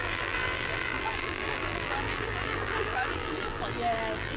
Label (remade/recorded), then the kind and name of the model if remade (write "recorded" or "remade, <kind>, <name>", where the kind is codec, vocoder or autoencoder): remade, vocoder, BigVGAN v2